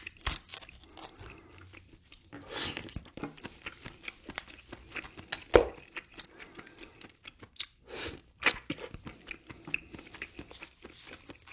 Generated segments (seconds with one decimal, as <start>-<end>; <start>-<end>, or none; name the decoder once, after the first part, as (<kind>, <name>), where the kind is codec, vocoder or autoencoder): none